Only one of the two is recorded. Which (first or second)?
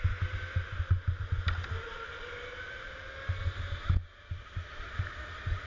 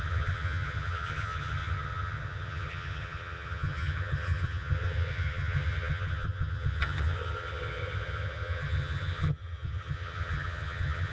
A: first